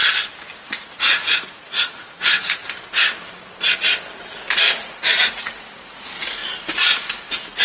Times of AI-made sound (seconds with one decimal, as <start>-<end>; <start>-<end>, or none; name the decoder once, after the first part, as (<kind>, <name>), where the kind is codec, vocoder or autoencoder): 0.6-2.6 (vocoder, Vocos); 4.6-6.4